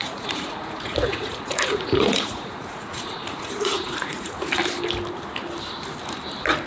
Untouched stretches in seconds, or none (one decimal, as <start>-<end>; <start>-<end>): 4.6-6.7